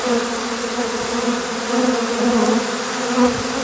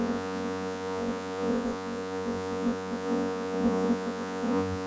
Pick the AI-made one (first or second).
second